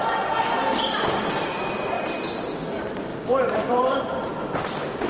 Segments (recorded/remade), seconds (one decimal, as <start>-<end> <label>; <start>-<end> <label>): 0.0-5.1 remade